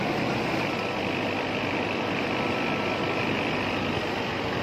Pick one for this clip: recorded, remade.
recorded